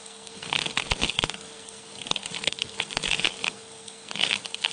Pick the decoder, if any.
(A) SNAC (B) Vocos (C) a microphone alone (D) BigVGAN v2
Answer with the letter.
A